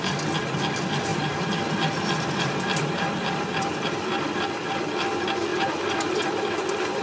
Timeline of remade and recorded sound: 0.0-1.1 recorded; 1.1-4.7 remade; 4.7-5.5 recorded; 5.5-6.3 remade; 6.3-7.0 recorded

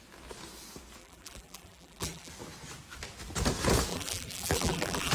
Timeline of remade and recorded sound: 0.0-1.0 recorded; 1.0-2.3 remade; 2.3-3.9 recorded; 3.9-5.1 remade

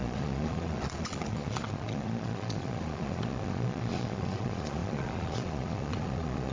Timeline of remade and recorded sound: 0.0-6.5 remade

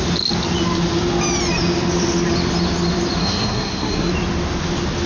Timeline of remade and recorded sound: 0.0-3.2 recorded; 3.2-4.1 remade; 4.1-5.1 recorded

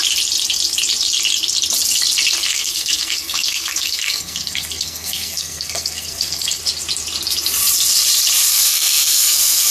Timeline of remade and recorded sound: 0.0-2.4 recorded; 2.4-6.6 remade; 6.6-8.5 recorded; 8.5-9.7 remade